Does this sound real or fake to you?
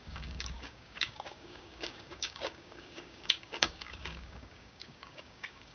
fake